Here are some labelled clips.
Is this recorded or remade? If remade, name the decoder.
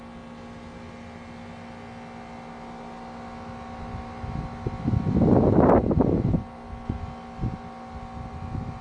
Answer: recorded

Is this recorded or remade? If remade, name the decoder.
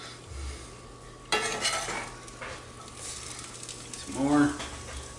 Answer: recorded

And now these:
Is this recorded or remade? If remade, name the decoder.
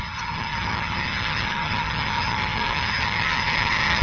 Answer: remade, vocoder, HiFi-GAN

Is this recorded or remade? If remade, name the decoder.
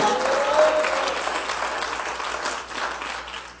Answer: recorded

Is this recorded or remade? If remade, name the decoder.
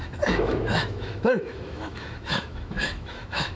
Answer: remade, autoencoder, DAC-VAE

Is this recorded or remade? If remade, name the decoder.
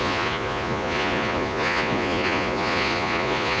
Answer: remade, vocoder, Vocos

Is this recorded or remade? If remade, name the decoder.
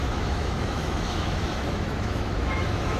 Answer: remade, autoencoder, DAC-VAE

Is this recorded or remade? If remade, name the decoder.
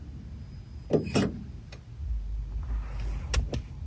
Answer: recorded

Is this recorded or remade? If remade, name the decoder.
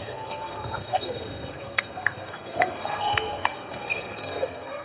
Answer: remade, codec, SNAC